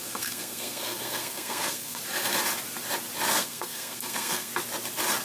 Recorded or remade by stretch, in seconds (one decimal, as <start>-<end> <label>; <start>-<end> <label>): 0.0-2.0 remade; 2.0-3.4 recorded; 3.4-4.5 remade; 4.5-5.2 recorded